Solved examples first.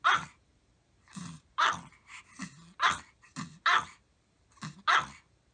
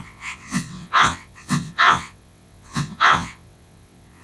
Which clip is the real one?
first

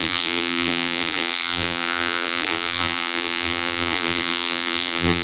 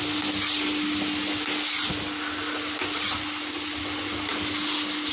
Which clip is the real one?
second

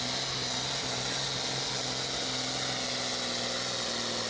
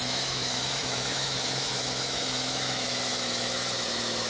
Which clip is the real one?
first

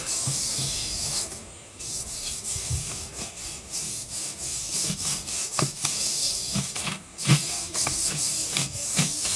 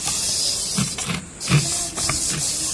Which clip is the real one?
second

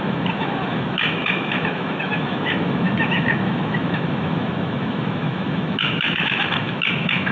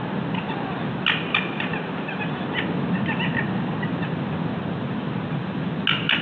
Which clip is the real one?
second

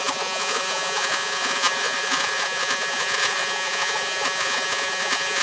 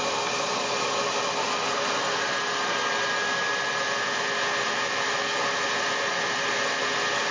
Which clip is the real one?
second